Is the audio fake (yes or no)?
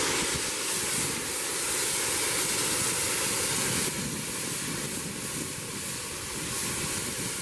no